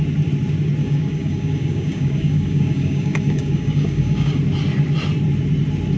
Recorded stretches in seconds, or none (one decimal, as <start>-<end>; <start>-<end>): 0.0-0.8; 4.4-6.0